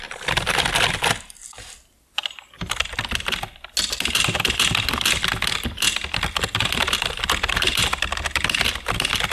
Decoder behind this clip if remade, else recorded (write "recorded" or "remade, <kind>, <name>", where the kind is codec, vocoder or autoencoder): recorded